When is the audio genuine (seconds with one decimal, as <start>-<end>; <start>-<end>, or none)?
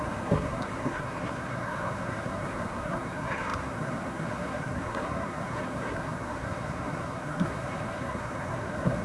none